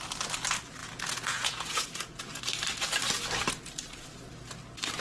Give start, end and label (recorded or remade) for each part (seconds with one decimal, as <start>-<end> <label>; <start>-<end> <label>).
0.0-0.8 recorded; 0.8-2.4 remade; 2.4-5.0 recorded